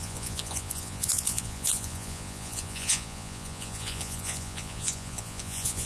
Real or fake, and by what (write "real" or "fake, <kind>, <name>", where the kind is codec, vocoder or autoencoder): fake, vocoder, Vocos